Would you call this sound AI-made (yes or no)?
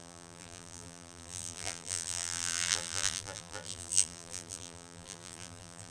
yes